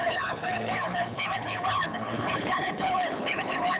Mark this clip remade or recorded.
remade